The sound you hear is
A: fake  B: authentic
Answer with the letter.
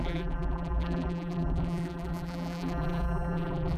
A